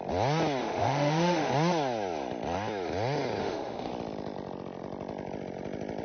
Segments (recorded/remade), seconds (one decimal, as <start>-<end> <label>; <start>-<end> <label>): 0.0-0.6 recorded; 0.6-1.5 remade; 1.5-3.4 recorded; 3.4-3.9 remade; 3.9-6.0 recorded